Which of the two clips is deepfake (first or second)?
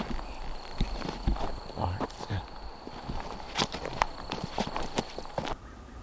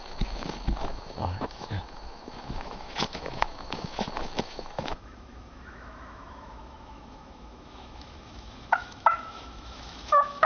second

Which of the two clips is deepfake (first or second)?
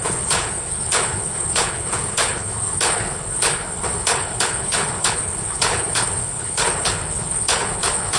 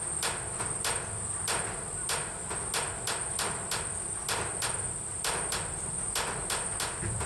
first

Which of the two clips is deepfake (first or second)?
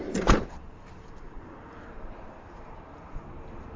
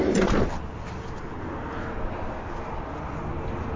first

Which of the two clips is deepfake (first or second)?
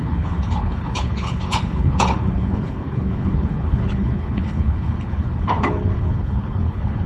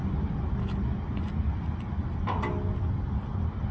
first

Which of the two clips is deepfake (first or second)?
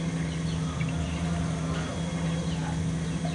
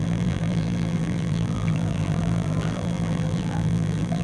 second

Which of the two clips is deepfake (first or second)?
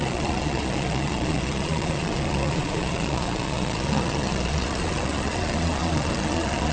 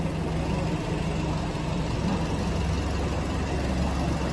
first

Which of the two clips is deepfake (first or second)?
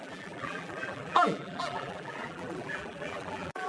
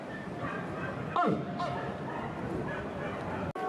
first